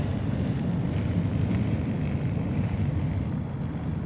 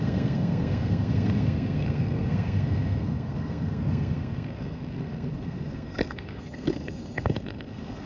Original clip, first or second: first